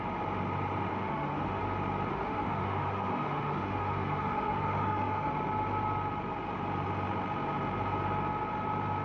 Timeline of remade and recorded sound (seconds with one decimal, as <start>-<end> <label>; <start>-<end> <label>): 0.0-0.9 recorded; 0.9-1.6 remade; 1.6-2.1 recorded; 2.1-5.3 remade; 5.3-9.0 recorded